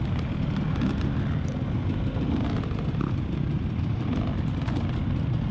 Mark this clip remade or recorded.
recorded